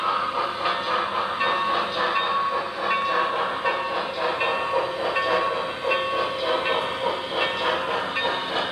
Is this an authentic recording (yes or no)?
yes